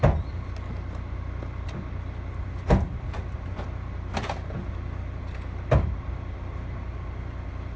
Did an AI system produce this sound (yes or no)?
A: no